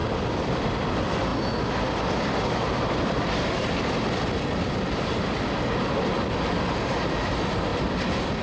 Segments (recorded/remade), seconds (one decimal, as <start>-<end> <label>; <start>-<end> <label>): 0.0-8.4 recorded

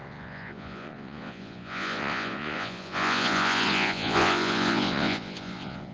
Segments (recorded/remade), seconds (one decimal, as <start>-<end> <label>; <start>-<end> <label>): 0.0-5.9 remade

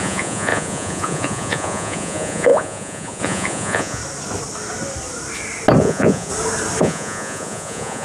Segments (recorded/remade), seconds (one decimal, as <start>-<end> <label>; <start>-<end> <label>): 0.0-4.0 remade; 4.0-5.8 recorded; 5.8-6.3 remade; 6.3-6.8 recorded; 6.8-8.0 remade

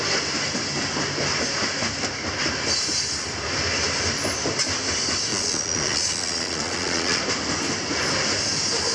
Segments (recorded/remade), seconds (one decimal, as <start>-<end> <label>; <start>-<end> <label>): 0.0-5.3 recorded; 5.3-7.2 remade; 7.2-8.9 recorded

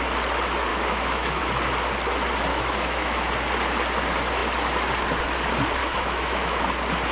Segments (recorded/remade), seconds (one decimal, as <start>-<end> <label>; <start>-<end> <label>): 0.0-0.7 recorded; 0.7-1.4 remade; 1.4-2.5 recorded; 2.5-3.3 remade; 3.3-5.8 recorded; 5.8-6.6 remade; 6.6-7.1 recorded

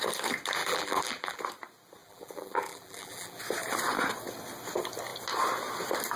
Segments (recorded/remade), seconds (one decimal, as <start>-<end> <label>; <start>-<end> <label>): 0.0-0.6 recorded; 0.6-1.4 remade; 1.4-2.0 recorded; 2.0-3.4 remade; 3.4-6.2 recorded